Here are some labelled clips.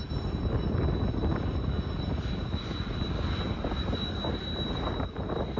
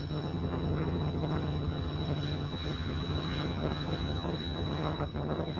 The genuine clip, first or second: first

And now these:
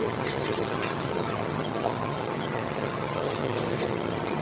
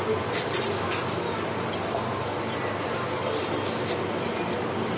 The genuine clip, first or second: second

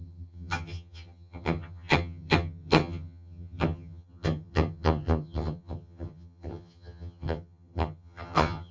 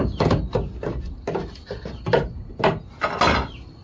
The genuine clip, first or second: second